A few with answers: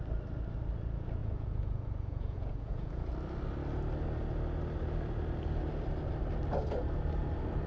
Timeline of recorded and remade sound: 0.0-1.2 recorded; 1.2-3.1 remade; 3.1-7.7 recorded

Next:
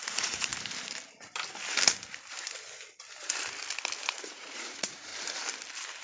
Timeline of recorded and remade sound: 0.0-0.5 remade; 0.5-4.1 recorded; 4.1-5.1 remade; 5.1-6.0 recorded

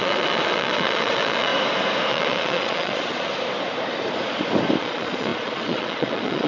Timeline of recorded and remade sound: 0.0-1.5 remade; 1.5-2.1 recorded; 2.1-3.3 remade; 3.3-4.8 recorded; 4.8-6.5 remade

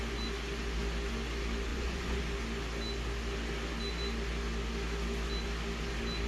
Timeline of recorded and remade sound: 0.0-1.7 recorded; 1.7-2.2 remade; 2.2-6.3 recorded

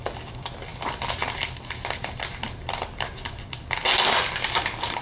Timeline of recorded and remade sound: 0.0-5.0 recorded

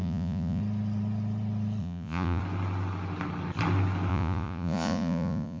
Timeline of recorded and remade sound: 0.0-0.6 remade; 0.6-1.8 recorded; 1.8-2.4 remade; 2.4-4.1 recorded; 4.1-5.6 remade

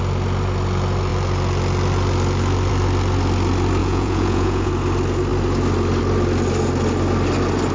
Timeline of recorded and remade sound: 0.0-3.8 recorded; 3.8-4.7 remade; 4.7-7.7 recorded

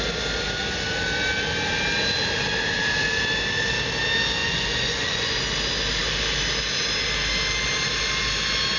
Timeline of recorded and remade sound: 0.0-4.4 recorded; 4.4-5.4 remade; 5.4-8.8 recorded